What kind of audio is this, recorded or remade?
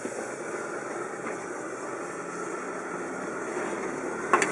recorded